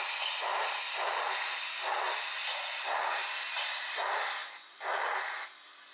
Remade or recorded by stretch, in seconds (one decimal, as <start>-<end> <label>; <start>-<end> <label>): 0.0-5.9 recorded